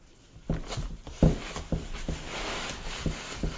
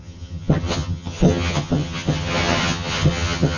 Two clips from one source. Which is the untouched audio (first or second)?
first